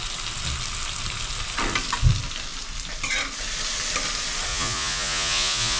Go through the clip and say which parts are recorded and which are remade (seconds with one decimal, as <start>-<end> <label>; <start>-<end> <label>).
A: 0.0-4.5 recorded; 4.5-5.8 remade